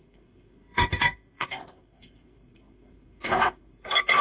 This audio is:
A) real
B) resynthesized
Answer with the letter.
B